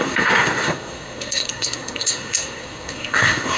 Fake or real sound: fake